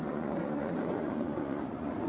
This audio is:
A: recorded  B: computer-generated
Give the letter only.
B